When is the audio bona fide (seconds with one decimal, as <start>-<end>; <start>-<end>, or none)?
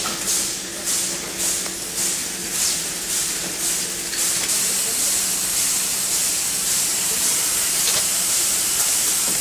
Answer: 0.0-2.4; 3.6-5.9